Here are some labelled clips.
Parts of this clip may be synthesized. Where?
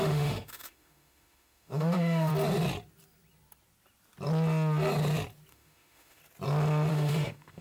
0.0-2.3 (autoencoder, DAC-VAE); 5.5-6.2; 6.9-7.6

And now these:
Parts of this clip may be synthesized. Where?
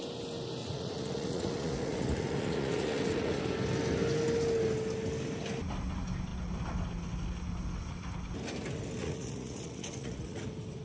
0.6-3.4 (vocoder, Vocos); 9.0-10.4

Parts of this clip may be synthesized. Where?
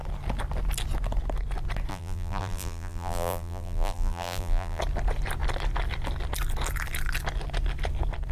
1.9-4.8 (vocoder, BigVGAN v2)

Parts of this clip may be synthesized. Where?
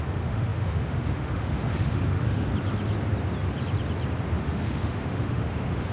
0.0-2.5 (autoencoder, DAC-VAE); 4.4-5.9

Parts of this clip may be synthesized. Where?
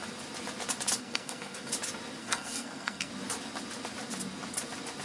1.0-1.7 (codec, SNAC); 2.2-3.1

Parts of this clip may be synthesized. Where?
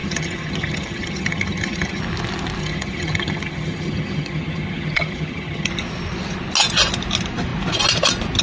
0.0-2.0 (vocoder, HiFi-GAN); 2.6-5.7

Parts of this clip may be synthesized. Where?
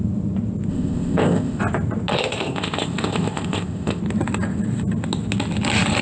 0.7-1.6 (codec, ZipCodec); 2.1-4.0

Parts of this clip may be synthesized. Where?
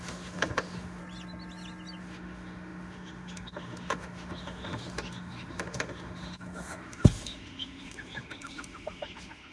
0.0-1.0 (autoencoder, DAC-VAE); 2.0-9.5